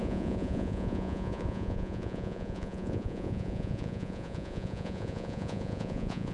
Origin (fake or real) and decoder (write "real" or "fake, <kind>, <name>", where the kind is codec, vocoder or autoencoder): fake, vocoder, Vocos